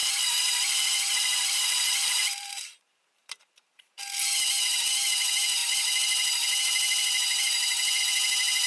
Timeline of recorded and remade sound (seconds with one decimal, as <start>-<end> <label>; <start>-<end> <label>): 0.0-4.0 remade; 4.0-8.7 recorded